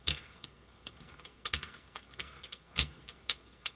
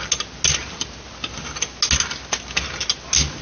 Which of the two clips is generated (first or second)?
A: first